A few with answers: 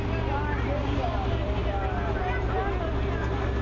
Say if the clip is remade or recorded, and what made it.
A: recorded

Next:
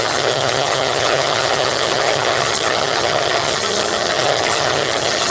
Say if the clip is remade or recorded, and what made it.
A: remade, vocoder, HiFi-GAN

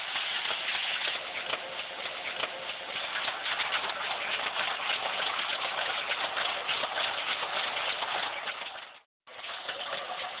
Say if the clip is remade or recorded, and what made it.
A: recorded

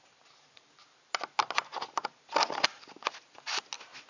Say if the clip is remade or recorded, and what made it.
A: recorded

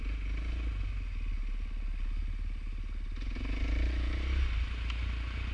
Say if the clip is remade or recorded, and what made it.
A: recorded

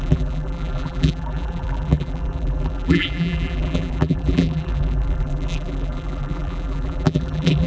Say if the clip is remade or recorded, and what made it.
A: remade, vocoder, BigVGAN v2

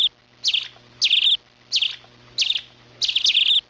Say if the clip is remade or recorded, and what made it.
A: recorded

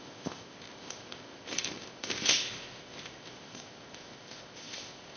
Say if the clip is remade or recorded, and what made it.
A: remade, codec, ZipCodec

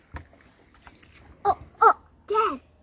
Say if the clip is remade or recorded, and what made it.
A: recorded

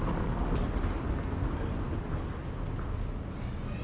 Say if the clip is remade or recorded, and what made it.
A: recorded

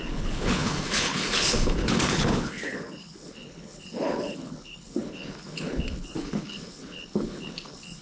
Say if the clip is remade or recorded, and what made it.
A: remade, codec, HILCodec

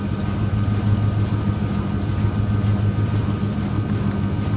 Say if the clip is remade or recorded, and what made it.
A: recorded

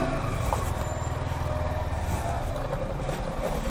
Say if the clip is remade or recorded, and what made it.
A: recorded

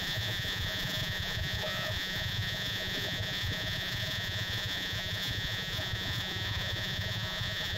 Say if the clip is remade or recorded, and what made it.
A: remade, vocoder, Vocos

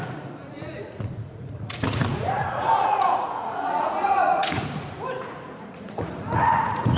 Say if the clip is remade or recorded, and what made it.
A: remade, vocoder, Vocos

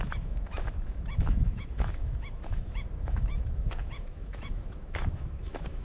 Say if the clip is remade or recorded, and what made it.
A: remade, autoencoder, DAC-VAE